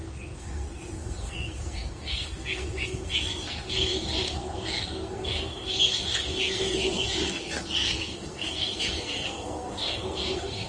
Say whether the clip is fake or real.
fake